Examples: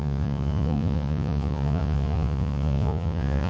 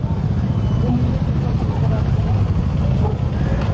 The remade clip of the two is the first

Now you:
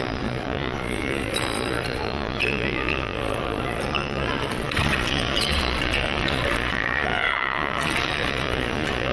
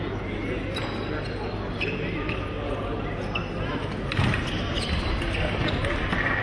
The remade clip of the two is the first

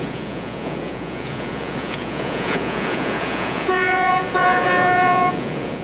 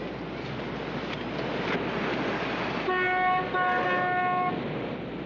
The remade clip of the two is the first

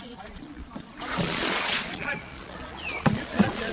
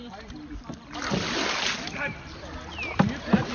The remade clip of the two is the first